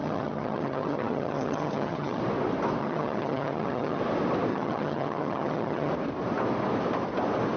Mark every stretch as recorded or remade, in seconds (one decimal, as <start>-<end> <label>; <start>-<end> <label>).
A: 0.0-2.2 remade; 2.2-2.8 recorded; 2.8-4.0 remade; 4.0-4.5 recorded; 4.5-5.9 remade; 5.9-7.6 recorded